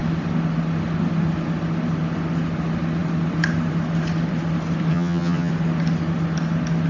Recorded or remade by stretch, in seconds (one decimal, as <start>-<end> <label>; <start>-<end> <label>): 0.0-4.9 recorded; 4.9-5.5 remade; 5.5-6.9 recorded